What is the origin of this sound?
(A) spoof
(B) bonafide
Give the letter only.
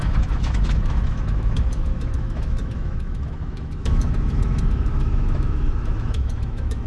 A